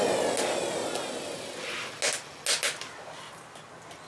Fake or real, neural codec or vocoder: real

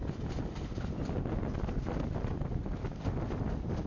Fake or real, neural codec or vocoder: real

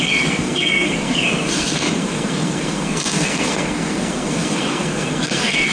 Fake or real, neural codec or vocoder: fake, codec, SNAC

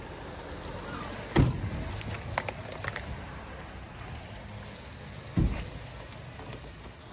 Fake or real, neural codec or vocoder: real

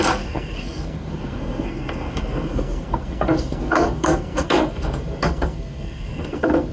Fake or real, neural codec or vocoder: fake, codec, SNAC